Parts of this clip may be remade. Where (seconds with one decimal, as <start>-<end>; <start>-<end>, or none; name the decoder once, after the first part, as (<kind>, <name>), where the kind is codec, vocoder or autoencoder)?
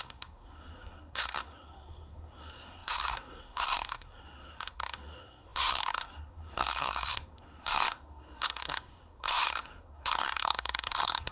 0.0-11.3 (codec, SNAC)